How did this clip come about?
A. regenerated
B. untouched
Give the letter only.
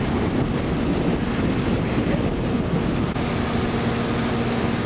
B